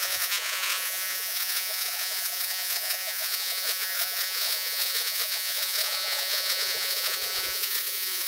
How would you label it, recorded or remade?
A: remade